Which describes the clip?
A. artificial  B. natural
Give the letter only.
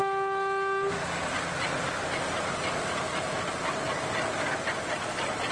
B